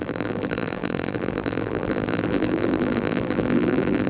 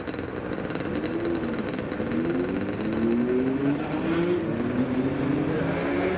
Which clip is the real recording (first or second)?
second